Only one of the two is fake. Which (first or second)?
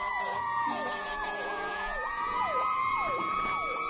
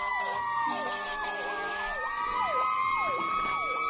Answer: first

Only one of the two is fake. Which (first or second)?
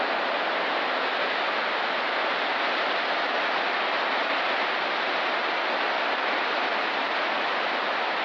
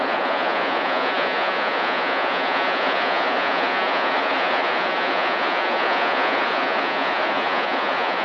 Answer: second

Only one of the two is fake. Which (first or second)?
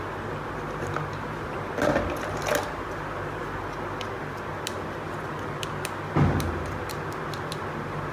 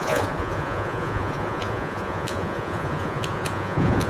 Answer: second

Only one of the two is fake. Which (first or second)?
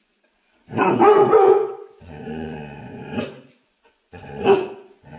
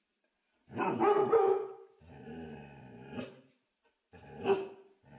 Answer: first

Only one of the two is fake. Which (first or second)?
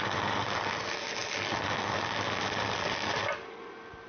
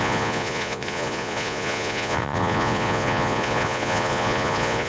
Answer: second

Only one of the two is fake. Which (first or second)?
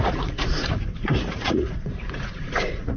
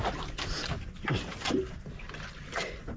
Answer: first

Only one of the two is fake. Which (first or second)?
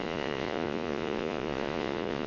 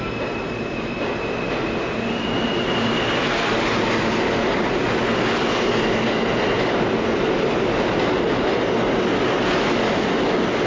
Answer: first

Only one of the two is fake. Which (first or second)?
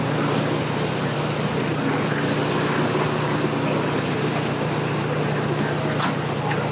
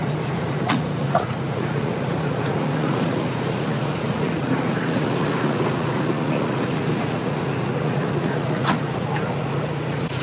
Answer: second